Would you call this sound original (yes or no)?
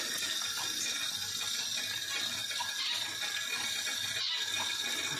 yes